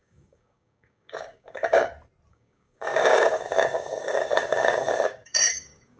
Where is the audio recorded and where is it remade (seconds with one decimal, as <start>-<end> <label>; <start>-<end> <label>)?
0.0-1.9 remade; 1.9-2.3 recorded; 2.3-6.0 remade